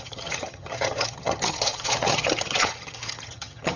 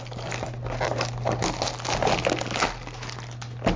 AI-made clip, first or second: first